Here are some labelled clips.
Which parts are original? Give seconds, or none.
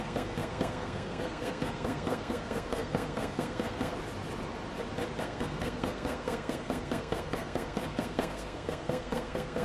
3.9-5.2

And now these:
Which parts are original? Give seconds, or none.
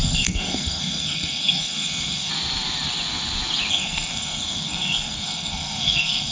2.3-3.7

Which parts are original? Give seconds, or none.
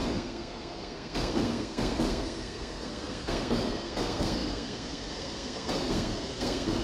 none